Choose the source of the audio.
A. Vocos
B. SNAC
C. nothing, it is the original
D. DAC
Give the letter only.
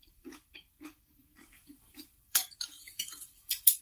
D